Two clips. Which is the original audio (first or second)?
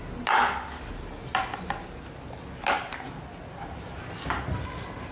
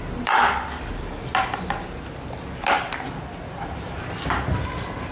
first